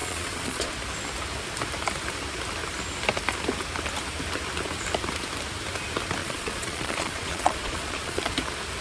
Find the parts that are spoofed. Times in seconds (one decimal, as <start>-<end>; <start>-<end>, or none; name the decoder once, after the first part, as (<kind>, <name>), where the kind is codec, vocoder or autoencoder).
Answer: 0.0-0.7 (vocoder, Vocos); 6.2-8.2